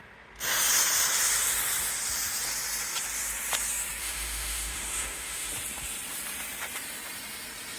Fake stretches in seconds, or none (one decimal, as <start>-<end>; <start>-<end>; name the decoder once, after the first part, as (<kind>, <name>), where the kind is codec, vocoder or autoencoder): 4.0-5.5 (autoencoder, DAC-VAE)